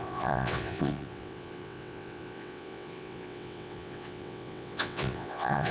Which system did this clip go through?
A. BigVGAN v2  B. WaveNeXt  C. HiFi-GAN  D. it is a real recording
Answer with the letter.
B